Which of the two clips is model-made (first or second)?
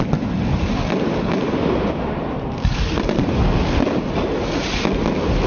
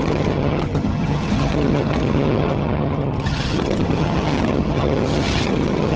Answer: second